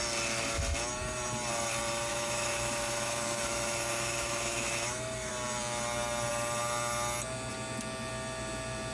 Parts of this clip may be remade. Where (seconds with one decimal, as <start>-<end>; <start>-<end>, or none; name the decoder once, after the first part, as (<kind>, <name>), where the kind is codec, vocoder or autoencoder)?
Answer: 2.1-5.3 (autoencoder, DAC-VAE)